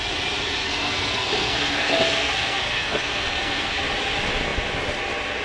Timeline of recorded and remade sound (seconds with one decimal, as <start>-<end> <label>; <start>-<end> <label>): 0.0-0.6 recorded; 0.6-3.8 remade; 3.8-5.4 recorded